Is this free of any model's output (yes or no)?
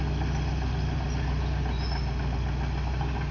yes